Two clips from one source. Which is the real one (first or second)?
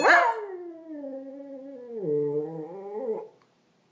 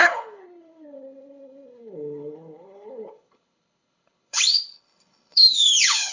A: first